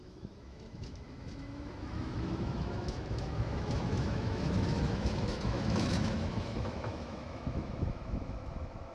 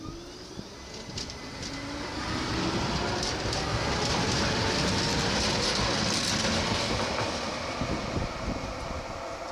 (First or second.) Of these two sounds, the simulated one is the first